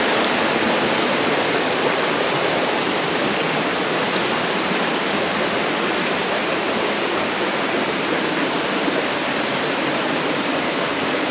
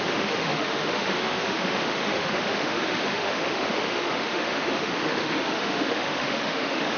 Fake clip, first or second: second